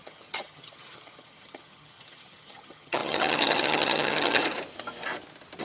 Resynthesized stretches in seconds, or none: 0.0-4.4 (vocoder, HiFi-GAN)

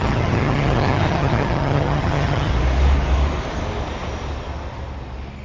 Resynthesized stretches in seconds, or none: 0.0-2.5 (vocoder, HiFi-GAN)